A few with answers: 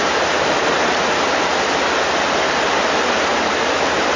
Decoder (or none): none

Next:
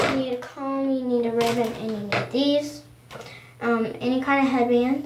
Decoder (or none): none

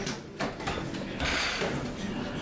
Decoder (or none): none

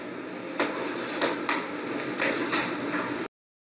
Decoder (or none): none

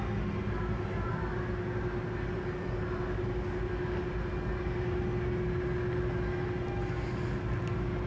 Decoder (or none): none